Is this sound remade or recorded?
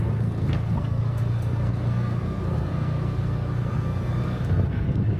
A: remade